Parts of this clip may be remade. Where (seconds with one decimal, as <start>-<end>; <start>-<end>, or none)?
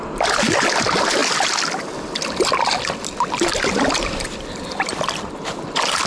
none